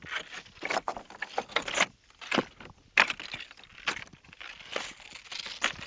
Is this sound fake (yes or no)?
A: no